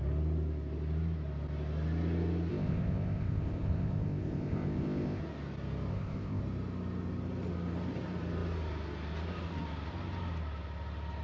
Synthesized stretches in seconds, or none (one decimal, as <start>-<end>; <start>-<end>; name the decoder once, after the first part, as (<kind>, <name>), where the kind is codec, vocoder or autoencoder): 2.5-5.2 (codec, ZipCodec); 5.9-6.4